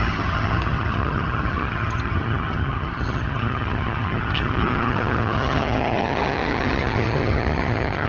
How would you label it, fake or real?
fake